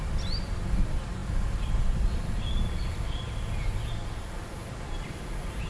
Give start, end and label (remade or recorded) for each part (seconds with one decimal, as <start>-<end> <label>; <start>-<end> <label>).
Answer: 0.0-5.7 recorded